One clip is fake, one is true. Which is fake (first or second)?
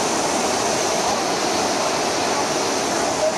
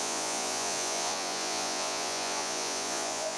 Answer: second